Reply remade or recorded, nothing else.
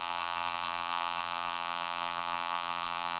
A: remade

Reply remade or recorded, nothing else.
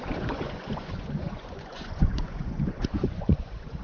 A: remade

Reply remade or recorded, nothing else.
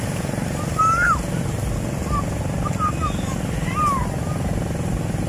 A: recorded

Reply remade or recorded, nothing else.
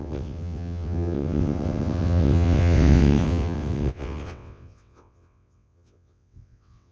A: remade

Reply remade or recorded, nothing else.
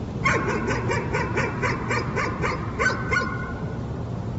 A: recorded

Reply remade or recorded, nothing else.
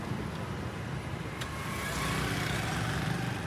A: recorded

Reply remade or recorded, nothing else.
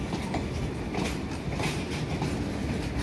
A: recorded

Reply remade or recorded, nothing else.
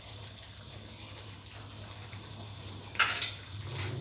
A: recorded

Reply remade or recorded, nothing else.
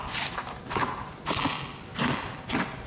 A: recorded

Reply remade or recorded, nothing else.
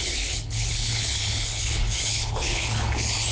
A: remade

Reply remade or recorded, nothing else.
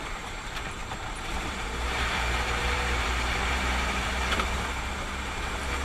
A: remade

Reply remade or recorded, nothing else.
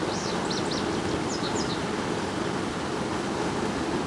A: recorded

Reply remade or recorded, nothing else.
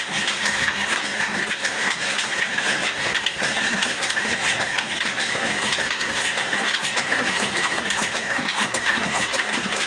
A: remade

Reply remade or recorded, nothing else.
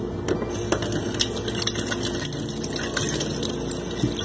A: recorded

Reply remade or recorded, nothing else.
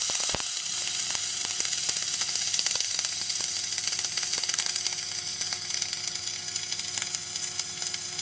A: recorded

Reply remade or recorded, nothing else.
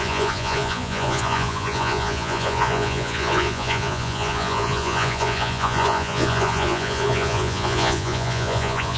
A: remade